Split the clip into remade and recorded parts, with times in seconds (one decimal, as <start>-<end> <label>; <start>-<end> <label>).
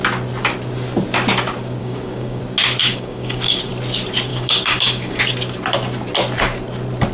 0.0-1.8 recorded; 1.8-2.4 remade; 2.4-2.8 recorded; 2.8-3.7 remade; 3.7-4.3 recorded; 4.3-5.2 remade; 5.2-7.1 recorded